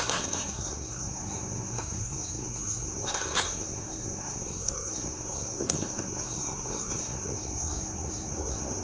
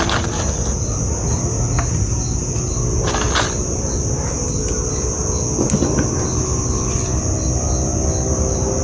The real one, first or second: second